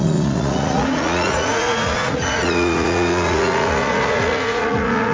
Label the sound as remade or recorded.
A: remade